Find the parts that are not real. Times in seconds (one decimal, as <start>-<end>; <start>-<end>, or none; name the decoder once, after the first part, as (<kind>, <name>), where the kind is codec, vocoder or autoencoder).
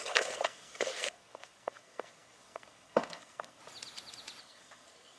0.0-3.6 (codec, SNAC); 4.4-5.2